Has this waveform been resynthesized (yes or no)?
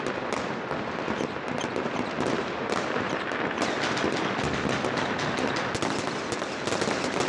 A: no